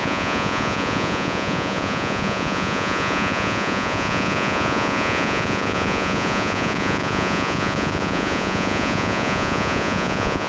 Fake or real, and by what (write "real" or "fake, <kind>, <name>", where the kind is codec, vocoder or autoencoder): fake, vocoder, Vocos